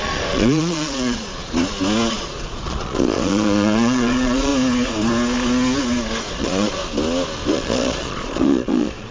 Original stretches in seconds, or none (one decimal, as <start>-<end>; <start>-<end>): 1.3-2.1; 4.5-6.3; 6.8-7.5